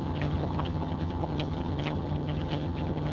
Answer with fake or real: fake